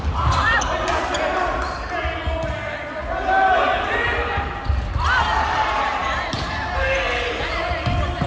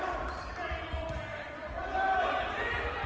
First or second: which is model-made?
second